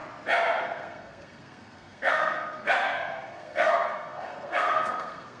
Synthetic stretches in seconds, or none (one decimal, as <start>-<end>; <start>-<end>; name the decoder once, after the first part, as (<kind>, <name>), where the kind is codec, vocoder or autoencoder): 0.6-5.4 (codec, SNAC)